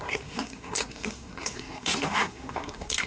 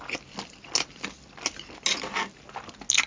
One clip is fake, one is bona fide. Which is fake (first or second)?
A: first